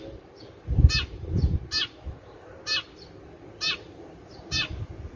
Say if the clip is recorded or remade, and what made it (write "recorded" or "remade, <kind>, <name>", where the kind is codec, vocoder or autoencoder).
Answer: recorded